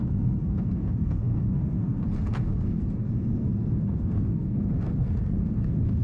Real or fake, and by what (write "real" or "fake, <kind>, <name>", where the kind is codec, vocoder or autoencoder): fake, codec, SNAC